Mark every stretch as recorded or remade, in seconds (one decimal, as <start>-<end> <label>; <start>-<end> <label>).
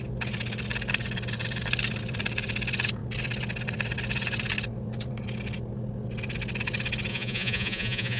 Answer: 0.0-7.1 recorded; 7.1-8.2 remade